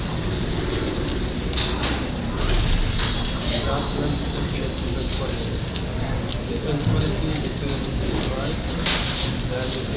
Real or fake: real